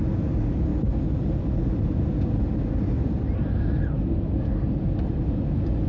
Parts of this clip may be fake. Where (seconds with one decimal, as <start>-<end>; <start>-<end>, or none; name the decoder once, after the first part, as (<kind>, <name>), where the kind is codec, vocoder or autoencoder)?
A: none